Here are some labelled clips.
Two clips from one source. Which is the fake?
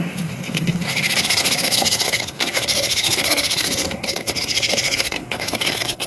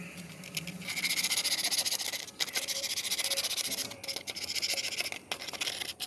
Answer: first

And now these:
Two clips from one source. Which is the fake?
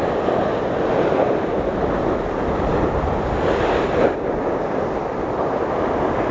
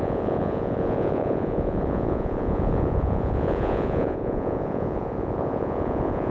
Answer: second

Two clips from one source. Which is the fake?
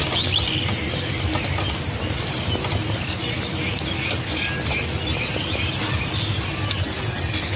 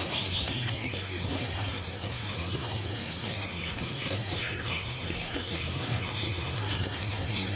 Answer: second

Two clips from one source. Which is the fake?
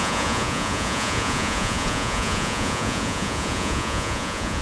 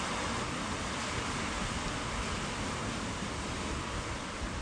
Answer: first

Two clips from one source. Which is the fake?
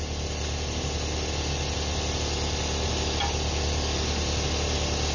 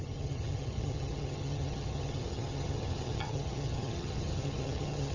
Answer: second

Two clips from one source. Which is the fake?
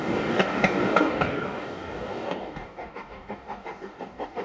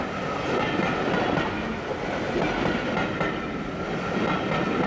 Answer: first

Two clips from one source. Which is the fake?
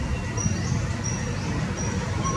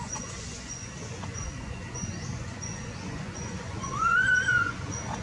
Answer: second